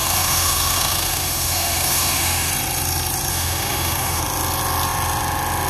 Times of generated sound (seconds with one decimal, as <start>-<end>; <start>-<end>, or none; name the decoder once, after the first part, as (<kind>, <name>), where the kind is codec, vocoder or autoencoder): 0.0-2.5 (autoencoder, DAC-VAE); 3.3-4.2